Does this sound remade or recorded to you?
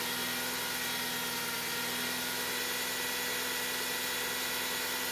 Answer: recorded